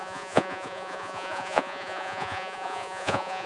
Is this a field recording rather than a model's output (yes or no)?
no